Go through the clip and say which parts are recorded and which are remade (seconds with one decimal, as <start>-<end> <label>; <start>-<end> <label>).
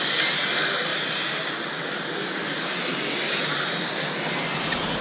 0.0-5.0 recorded